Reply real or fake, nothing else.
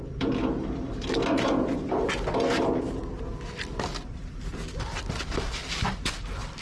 real